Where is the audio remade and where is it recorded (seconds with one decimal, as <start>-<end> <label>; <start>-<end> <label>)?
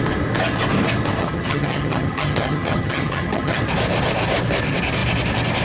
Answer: 0.0-1.2 recorded; 1.2-3.6 remade; 3.6-5.6 recorded